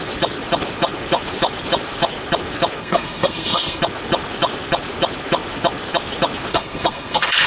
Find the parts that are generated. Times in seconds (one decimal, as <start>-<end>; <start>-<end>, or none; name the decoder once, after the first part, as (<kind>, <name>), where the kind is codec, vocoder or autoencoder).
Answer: 2.8-3.8 (codec, SNAC); 6.5-7.5